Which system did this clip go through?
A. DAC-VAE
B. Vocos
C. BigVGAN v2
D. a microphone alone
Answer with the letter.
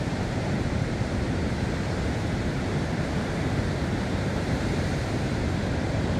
C